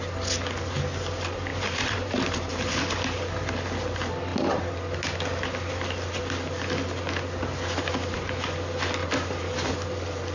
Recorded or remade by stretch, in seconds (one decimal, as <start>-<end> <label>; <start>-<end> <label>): 0.0-1.5 recorded; 1.5-2.8 remade; 2.8-9.0 recorded; 9.0-9.7 remade; 9.7-10.3 recorded